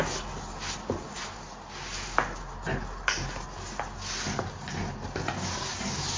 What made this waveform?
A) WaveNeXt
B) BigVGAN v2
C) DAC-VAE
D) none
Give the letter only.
D